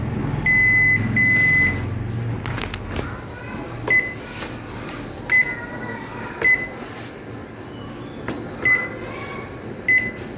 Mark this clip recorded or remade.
recorded